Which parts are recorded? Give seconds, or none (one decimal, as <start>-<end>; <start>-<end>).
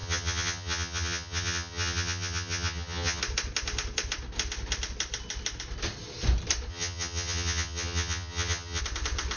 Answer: 3.2-6.7; 8.8-9.4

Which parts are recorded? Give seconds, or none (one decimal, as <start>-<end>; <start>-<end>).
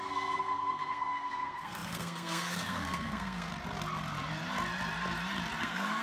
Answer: 3.5-5.6